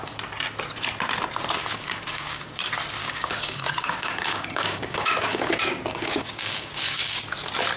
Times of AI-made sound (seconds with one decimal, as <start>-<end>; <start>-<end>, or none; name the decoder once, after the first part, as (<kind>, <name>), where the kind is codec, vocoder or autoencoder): 1.6-2.6 (codec, DAC); 3.0-7.2